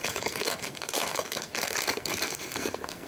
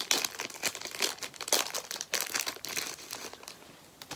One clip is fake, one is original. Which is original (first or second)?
second